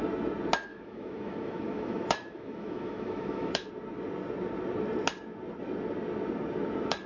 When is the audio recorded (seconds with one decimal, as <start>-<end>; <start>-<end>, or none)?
0.0-0.7; 3.7-7.1